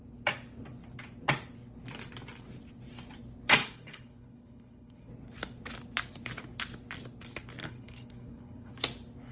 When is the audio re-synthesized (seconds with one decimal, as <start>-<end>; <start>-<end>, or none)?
3.6-5.1; 7.6-8.7

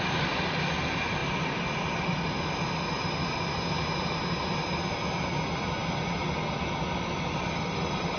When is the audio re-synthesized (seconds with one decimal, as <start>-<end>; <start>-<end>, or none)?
none

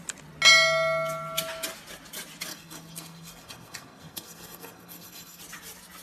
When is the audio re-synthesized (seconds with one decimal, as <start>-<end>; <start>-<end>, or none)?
2.5-5.4